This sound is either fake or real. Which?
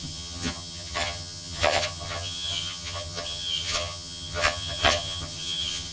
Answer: fake